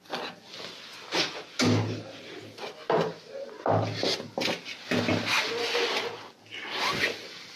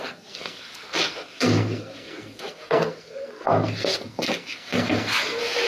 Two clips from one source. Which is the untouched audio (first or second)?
first